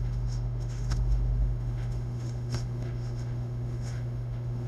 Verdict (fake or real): fake